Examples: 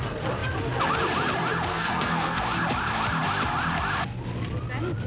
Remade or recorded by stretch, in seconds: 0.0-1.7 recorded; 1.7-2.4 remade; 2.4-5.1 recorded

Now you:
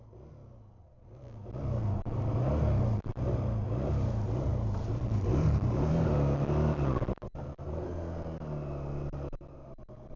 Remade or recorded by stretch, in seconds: 0.0-10.2 recorded

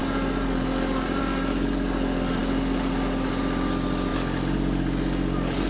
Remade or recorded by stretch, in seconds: 0.0-5.7 recorded

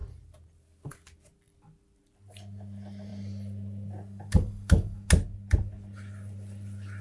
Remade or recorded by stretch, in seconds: 0.0-7.0 recorded

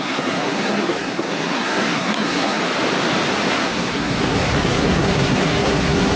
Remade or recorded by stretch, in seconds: 0.0-2.6 remade; 2.6-3.5 recorded; 3.5-6.2 remade